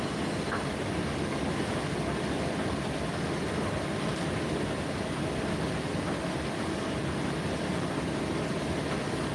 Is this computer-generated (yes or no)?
no